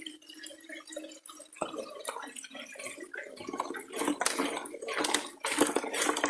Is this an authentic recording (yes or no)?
yes